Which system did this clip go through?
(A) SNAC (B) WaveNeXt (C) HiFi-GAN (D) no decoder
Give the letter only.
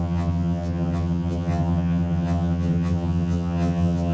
C